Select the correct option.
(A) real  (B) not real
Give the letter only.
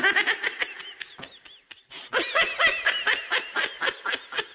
A